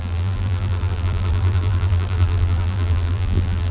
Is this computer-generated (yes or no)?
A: yes